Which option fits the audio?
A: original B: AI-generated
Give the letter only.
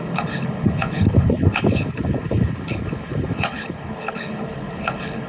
B